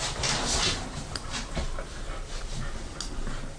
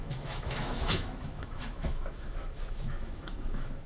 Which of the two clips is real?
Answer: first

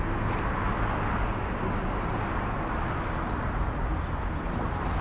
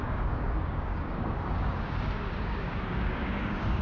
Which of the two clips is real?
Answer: first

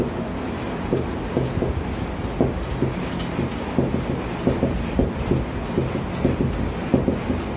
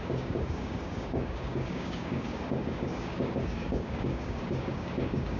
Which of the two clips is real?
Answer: first